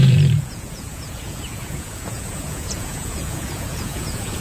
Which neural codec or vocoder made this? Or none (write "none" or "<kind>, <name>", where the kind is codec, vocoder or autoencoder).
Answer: vocoder, Vocos